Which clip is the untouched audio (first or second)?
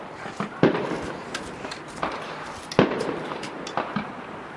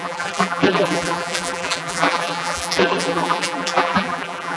first